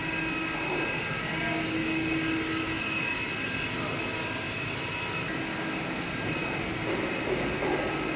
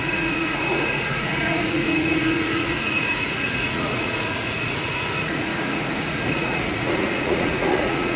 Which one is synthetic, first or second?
second